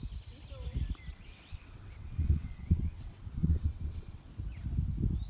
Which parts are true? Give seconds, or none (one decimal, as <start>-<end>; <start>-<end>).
0.0-1.1; 4.3-5.3